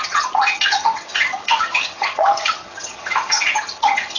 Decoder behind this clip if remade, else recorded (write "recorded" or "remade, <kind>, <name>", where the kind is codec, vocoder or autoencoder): remade, vocoder, HiFi-GAN